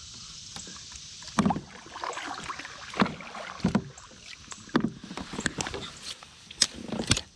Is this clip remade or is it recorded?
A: recorded